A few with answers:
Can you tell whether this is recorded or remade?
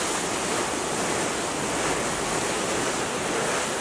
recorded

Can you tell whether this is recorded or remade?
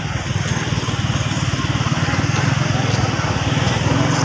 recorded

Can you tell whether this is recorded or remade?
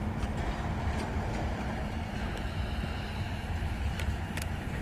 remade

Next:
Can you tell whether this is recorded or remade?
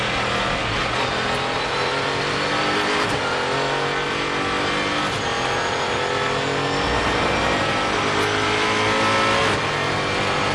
recorded